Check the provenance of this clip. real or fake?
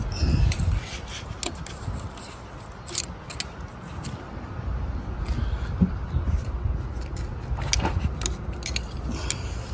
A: real